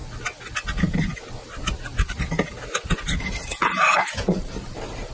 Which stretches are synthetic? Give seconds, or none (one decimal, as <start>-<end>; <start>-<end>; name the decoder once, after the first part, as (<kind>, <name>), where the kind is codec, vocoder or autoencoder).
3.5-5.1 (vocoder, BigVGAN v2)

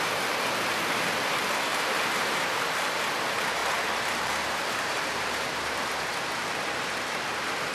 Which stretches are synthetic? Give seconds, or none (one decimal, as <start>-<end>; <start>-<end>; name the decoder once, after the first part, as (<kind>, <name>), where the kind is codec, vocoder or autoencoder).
1.7-3.0 (vocoder, BigVGAN v2); 3.6-5.6

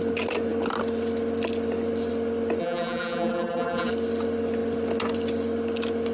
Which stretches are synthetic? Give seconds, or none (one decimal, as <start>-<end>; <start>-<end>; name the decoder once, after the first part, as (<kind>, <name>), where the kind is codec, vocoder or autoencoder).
2.6-3.9 (vocoder, BigVGAN v2)